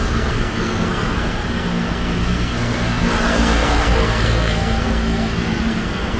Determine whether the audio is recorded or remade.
remade